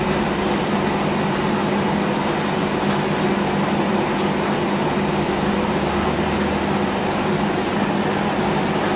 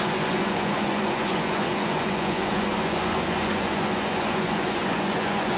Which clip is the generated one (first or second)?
second